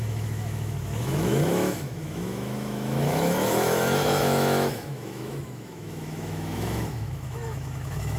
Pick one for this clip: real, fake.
fake